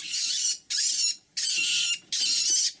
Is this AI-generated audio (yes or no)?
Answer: no